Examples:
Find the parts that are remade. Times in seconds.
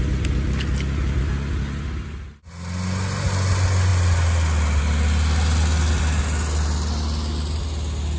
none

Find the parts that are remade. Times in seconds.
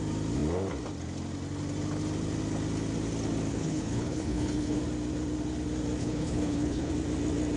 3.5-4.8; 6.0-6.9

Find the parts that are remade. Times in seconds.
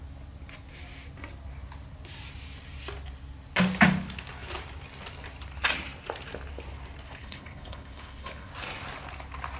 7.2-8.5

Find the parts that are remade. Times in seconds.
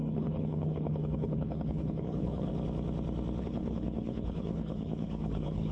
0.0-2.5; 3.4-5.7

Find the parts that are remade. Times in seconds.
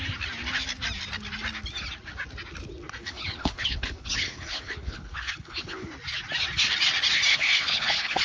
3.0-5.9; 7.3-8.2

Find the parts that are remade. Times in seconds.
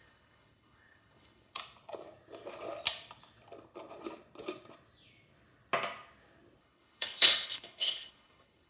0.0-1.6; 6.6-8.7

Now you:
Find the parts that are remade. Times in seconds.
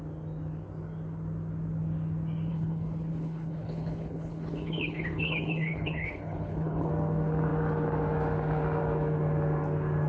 2.5-6.9